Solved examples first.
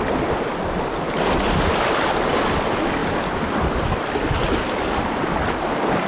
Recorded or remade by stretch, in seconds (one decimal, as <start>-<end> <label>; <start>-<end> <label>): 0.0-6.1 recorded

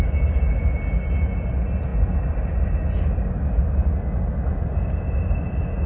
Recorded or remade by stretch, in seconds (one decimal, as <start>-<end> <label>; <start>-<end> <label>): 0.0-5.9 recorded

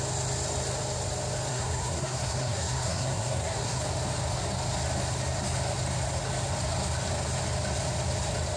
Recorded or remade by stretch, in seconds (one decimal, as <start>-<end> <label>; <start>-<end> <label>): 0.0-1.5 recorded; 1.5-3.8 remade; 3.8-8.6 recorded